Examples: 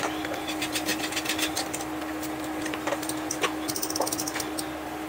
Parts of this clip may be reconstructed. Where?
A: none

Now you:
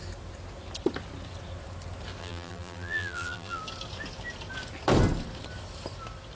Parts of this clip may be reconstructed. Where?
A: 2.2-3.6

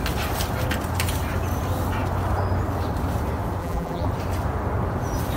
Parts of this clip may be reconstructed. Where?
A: 3.6-4.1